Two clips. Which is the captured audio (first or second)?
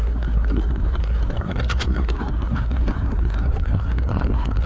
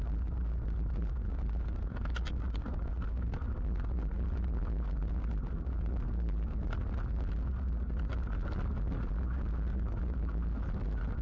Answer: second